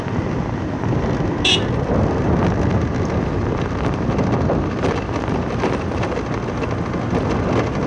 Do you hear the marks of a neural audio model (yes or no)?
no